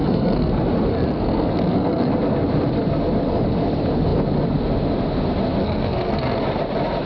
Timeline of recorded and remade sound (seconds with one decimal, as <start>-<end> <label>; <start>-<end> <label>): 0.0-0.5 remade; 0.5-0.9 recorded; 0.9-2.1 remade; 2.1-5.6 recorded; 5.6-6.4 remade; 6.4-7.1 recorded

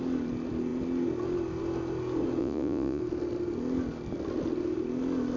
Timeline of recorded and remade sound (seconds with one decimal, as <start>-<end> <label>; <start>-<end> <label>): 0.0-2.4 recorded; 2.4-3.0 remade; 3.0-5.4 recorded

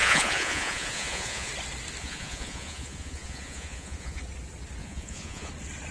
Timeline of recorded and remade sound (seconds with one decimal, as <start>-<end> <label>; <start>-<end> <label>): 0.0-1.5 remade; 1.5-2.0 recorded; 2.0-4.2 remade; 4.2-4.8 recorded; 4.8-5.5 remade; 5.5-5.9 recorded

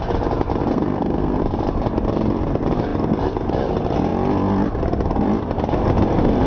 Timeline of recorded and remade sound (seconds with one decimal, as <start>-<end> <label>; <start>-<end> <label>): 0.0-0.7 recorded; 0.7-1.4 remade; 1.4-6.5 recorded

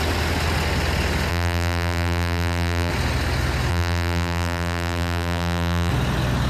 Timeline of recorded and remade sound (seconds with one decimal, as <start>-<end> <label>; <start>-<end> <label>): 0.0-1.3 recorded; 1.3-2.9 remade; 2.9-3.7 recorded; 3.7-5.9 remade; 5.9-6.5 recorded